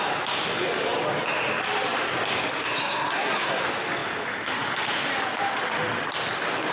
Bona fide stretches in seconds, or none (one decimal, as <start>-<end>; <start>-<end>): 0.0-2.8; 3.6-6.7